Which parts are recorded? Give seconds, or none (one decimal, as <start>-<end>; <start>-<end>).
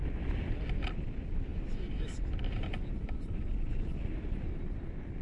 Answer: 0.0-5.2